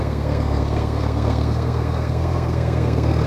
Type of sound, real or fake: fake